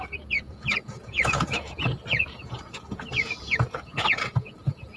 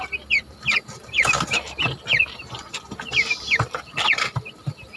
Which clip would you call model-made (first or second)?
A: first